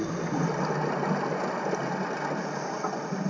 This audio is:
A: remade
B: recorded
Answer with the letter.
B